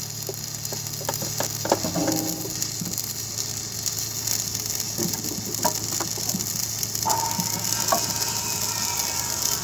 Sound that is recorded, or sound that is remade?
recorded